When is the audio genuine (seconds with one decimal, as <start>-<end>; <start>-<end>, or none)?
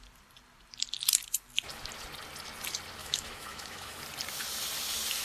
0.0-3.0; 4.0-5.2